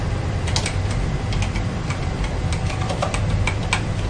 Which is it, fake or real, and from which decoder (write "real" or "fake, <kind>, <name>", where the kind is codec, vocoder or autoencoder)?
real